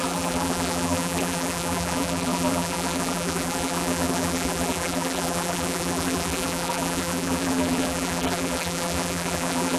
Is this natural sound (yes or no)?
no